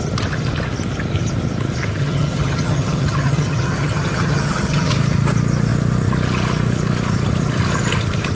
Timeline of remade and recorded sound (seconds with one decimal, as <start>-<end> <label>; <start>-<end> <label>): 0.0-2.0 recorded; 2.0-4.9 remade; 4.9-8.3 recorded